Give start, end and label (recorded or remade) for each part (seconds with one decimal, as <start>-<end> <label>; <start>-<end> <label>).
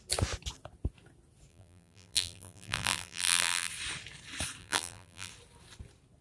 0.0-1.5 recorded; 1.5-3.7 remade; 3.7-4.6 recorded; 4.6-5.3 remade; 5.3-6.2 recorded